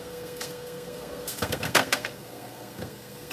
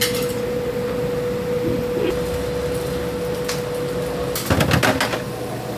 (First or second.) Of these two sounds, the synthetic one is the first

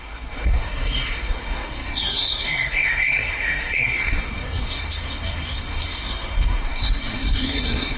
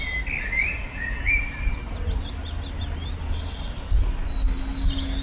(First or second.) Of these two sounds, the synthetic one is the first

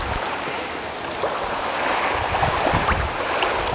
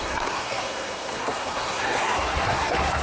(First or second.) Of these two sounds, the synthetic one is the second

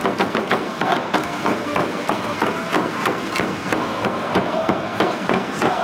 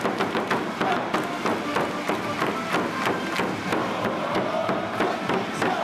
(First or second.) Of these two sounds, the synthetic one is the first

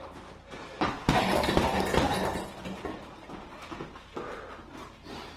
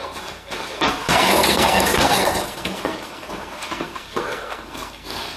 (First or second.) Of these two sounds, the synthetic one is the second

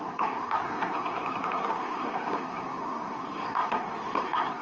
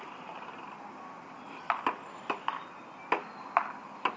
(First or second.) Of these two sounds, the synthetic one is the first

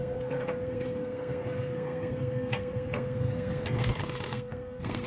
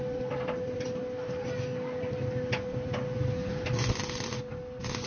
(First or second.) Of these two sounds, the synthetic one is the first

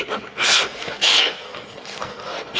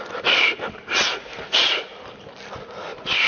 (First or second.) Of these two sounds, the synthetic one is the first